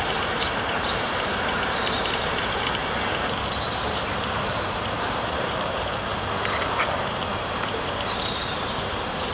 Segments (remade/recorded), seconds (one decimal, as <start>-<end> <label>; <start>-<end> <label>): 0.0-2.8 remade; 2.8-3.6 recorded; 3.6-6.1 remade; 6.1-7.6 recorded; 7.6-9.3 remade